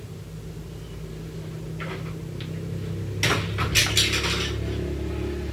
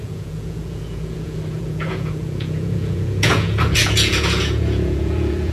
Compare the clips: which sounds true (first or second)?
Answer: first